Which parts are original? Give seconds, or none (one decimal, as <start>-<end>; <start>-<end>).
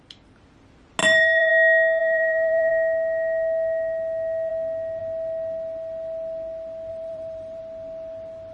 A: 0.0-1.0; 1.5-2.0; 2.7-6.9; 7.6-8.5